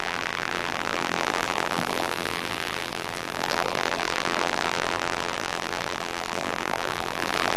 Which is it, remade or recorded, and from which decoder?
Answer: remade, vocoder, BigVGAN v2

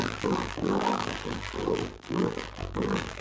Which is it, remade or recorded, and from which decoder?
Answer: remade, vocoder, BigVGAN v2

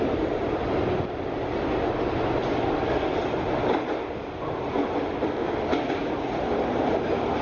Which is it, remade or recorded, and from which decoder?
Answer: recorded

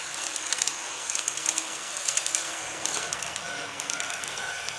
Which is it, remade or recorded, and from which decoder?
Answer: remade, codec, SNAC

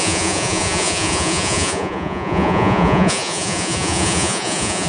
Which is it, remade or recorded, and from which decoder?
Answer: remade, vocoder, Vocos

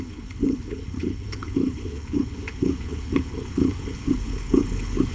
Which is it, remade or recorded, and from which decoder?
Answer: remade, codec, HILCodec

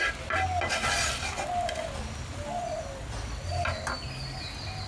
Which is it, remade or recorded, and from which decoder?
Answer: recorded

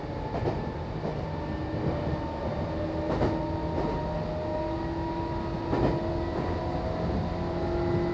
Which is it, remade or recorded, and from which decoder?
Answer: recorded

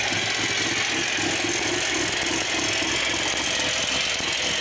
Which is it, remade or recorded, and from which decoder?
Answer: recorded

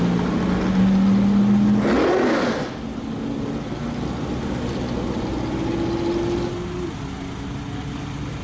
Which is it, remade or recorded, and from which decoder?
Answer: recorded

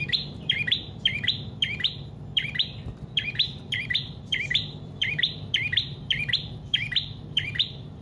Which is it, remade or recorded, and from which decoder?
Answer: remade, vocoder, BigVGAN v2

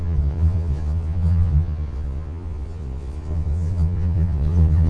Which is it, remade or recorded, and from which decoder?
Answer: remade, vocoder, Vocos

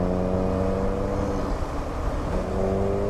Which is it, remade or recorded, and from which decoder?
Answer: recorded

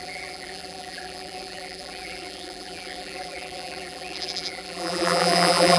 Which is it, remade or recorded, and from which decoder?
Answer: remade, vocoder, BigVGAN v2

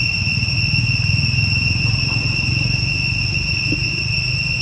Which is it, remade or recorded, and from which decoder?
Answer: recorded